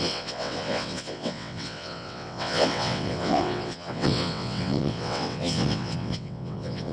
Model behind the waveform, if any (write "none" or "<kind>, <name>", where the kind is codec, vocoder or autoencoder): vocoder, WaveNeXt